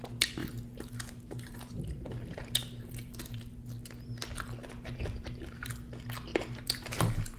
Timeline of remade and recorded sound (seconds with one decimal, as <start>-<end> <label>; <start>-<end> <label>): 0.0-0.4 recorded; 0.4-3.6 remade; 3.6-4.6 recorded; 4.6-5.7 remade; 5.7-6.3 recorded; 6.3-7.4 remade